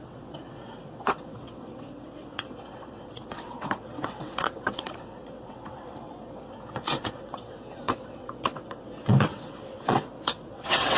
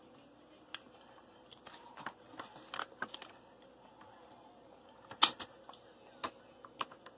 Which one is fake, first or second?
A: first